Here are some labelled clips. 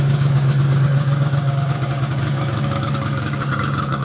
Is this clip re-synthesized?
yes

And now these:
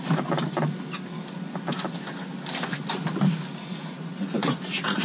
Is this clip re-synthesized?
no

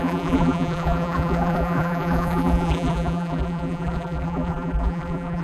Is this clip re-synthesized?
yes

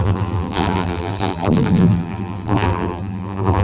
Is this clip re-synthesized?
yes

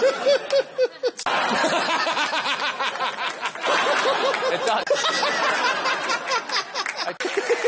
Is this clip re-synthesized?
no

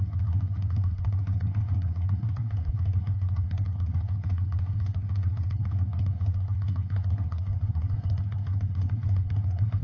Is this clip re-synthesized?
yes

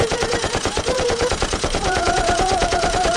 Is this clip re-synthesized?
yes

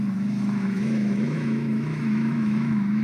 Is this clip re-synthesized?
yes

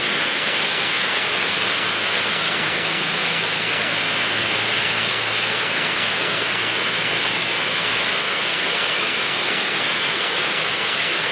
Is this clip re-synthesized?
yes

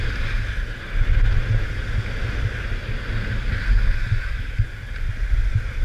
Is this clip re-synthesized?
no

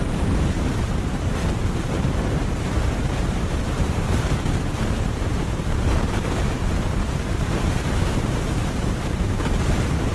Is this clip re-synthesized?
yes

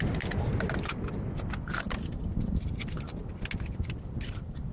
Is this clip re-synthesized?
no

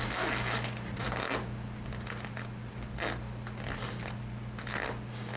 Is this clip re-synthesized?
no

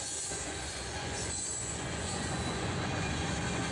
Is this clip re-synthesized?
yes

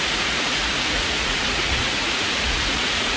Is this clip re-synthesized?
yes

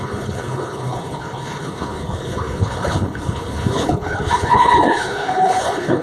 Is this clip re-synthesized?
yes